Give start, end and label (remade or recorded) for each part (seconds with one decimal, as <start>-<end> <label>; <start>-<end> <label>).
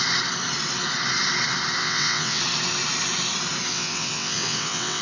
0.0-1.8 recorded; 1.8-2.4 remade; 2.4-3.7 recorded; 3.7-5.0 remade